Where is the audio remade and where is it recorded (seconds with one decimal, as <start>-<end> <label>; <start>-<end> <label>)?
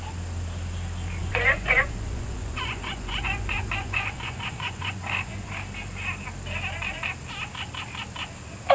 0.0-1.2 recorded; 1.2-5.5 remade; 5.5-8.7 recorded